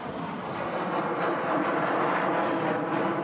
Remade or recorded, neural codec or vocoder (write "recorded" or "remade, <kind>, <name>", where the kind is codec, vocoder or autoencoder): recorded